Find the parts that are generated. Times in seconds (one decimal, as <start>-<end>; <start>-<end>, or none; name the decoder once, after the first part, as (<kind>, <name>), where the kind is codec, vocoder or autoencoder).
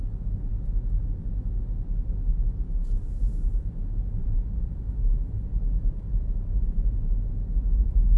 2.8-7.0 (vocoder, BigVGAN v2)